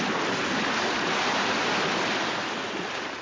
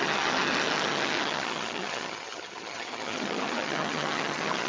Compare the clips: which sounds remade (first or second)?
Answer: second